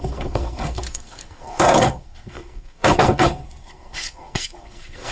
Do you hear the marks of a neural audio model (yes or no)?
yes